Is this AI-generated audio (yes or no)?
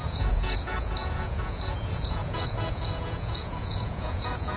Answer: yes